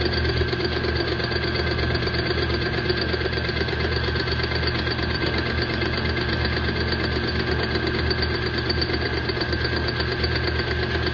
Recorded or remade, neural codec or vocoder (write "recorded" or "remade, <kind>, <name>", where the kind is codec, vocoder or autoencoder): recorded